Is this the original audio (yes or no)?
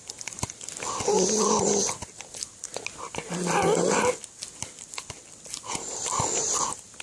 yes